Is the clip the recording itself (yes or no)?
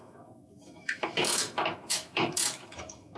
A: no